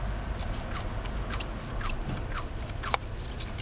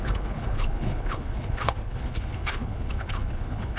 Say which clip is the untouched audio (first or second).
first